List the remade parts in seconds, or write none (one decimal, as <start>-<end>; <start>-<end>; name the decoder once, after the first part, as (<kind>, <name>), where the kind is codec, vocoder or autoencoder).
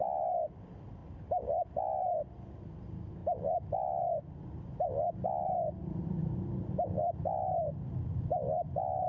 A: none